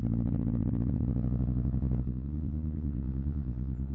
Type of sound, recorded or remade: remade